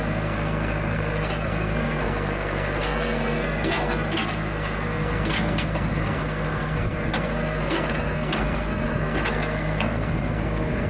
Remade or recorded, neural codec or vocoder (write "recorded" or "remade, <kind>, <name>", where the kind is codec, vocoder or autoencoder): remade, codec, SNAC